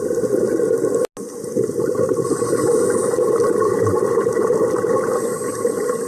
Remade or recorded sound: recorded